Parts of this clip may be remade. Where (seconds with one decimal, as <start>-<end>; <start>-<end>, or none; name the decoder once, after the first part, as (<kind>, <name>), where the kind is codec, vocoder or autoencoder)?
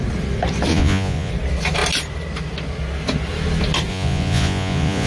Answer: 0.7-1.3 (vocoder, Vocos); 3.9-5.1